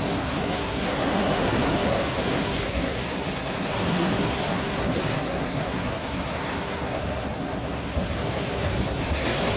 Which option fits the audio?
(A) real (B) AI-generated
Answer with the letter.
B